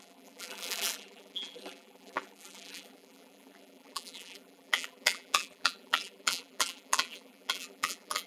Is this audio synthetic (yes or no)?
yes